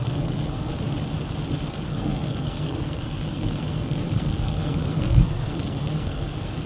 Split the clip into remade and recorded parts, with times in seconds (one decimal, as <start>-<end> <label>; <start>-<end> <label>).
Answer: 0.0-0.7 remade; 0.7-1.7 recorded; 1.7-6.7 remade